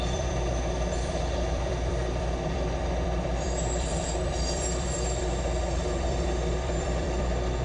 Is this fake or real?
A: fake